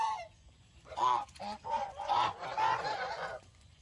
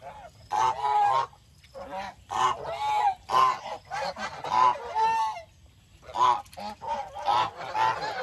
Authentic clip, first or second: second